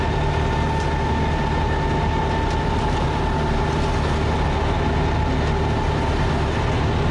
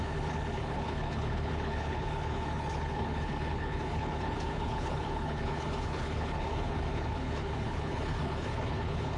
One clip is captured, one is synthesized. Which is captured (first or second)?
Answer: first